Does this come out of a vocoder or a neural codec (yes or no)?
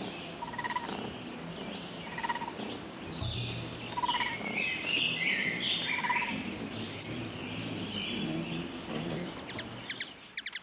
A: no